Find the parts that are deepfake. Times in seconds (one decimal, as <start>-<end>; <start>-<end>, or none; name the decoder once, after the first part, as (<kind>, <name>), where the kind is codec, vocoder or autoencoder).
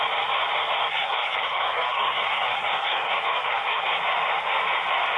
0.9-4.0 (codec, SNAC)